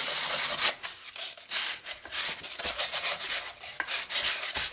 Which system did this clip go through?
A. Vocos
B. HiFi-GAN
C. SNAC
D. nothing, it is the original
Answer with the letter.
D